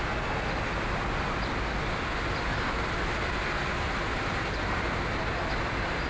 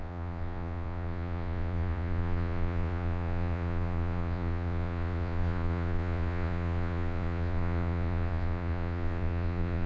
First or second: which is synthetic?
second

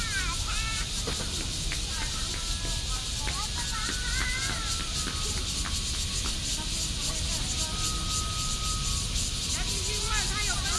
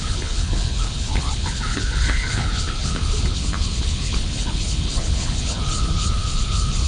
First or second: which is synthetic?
second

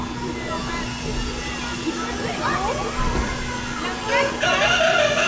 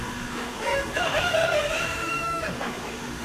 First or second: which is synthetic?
second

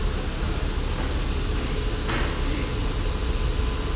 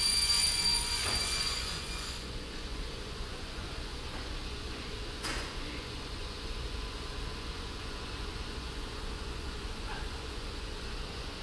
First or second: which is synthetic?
second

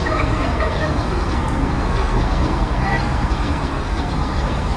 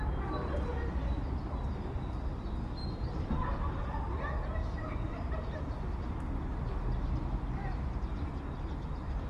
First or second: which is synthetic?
first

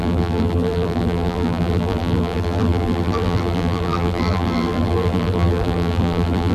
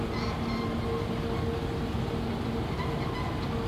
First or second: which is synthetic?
first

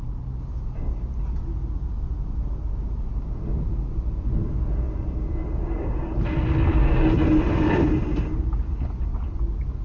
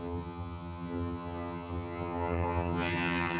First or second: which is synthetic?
second